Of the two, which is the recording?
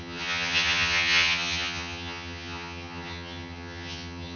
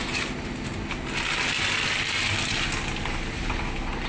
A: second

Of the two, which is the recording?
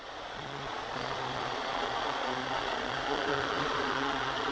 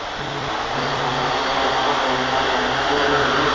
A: second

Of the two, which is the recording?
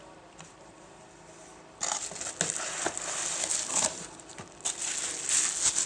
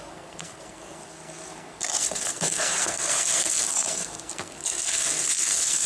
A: first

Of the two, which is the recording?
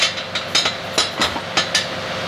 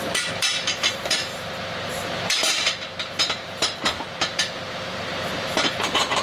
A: first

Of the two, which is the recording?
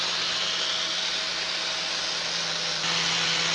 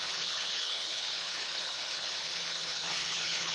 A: first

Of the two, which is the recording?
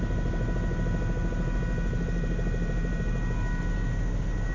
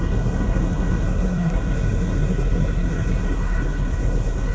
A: first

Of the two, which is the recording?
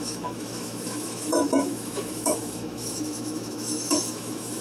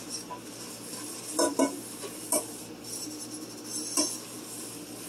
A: second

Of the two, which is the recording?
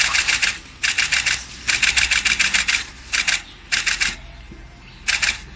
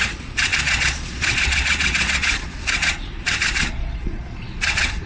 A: first